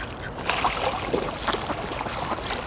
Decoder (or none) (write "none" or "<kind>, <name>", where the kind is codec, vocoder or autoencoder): none